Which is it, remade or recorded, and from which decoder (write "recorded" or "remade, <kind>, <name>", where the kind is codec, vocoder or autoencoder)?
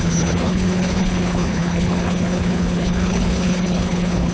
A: remade, codec, HILCodec